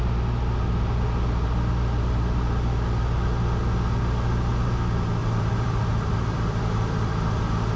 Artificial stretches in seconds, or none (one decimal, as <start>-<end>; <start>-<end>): 5.2-7.3

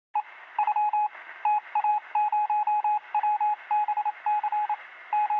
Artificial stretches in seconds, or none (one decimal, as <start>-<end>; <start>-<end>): none

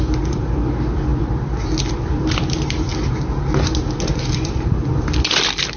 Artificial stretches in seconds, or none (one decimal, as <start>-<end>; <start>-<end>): 0.0-2.9; 4.2-5.8

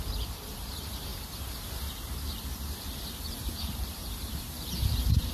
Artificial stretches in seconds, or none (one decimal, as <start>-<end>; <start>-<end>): 0.0-5.3

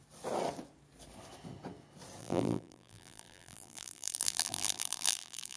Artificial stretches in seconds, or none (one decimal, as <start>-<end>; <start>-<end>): 2.2-5.6